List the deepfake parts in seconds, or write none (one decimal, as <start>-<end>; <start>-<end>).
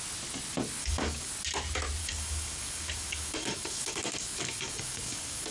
0.8-1.3; 2.0-5.5